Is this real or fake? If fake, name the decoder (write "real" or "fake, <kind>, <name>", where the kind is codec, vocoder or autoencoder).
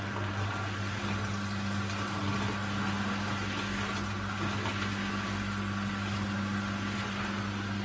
real